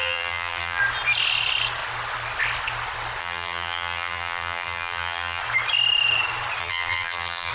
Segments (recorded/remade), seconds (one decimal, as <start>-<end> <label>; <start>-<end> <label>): 0.0-0.8 remade; 0.8-3.2 recorded; 3.2-5.4 remade; 5.4-6.6 recorded; 6.6-7.5 remade